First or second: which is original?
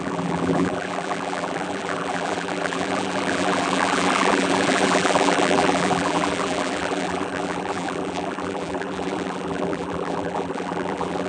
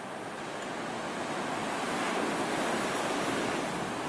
second